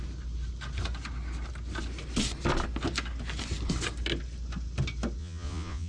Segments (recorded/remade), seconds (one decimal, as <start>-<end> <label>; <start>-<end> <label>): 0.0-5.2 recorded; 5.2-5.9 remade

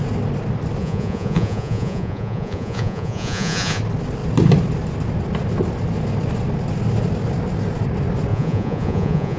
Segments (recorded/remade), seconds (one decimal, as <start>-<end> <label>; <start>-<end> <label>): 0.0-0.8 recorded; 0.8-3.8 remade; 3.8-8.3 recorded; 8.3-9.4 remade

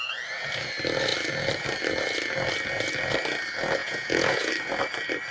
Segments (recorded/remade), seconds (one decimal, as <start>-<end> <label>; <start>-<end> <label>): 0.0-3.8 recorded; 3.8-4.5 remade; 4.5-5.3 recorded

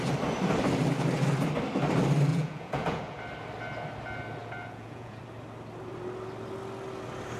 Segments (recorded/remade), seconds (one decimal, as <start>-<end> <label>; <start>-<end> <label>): 0.0-2.3 recorded; 2.3-3.2 remade; 3.2-4.4 recorded; 4.4-5.2 remade; 5.2-7.4 recorded

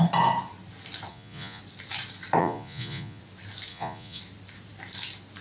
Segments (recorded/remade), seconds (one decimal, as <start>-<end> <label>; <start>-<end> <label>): 0.0-1.1 recorded; 1.1-1.6 remade; 1.6-2.4 recorded; 2.4-3.2 remade; 3.2-3.7 recorded; 3.7-4.2 remade; 4.2-5.4 recorded